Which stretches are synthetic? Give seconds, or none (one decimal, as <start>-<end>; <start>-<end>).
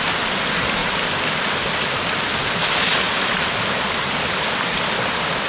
none